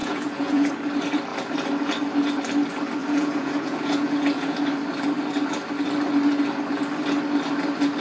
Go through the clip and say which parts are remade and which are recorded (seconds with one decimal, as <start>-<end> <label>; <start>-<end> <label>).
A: 0.0-0.7 remade; 0.7-3.0 recorded; 3.0-4.6 remade; 4.6-8.0 recorded